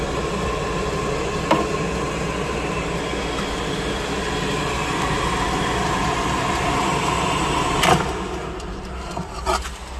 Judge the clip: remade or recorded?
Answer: recorded